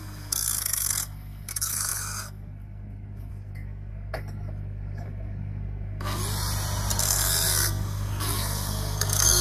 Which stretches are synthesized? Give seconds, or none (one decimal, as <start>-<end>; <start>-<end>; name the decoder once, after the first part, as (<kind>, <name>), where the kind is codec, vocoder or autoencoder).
0.0-6.2 (codec, SNAC); 7.0-9.4